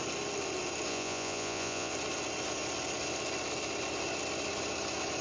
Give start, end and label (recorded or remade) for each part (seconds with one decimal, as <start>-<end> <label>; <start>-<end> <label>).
0.0-0.9 recorded; 0.9-1.9 remade; 1.9-5.2 recorded